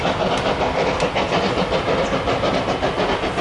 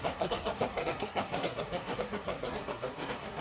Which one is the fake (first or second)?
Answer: second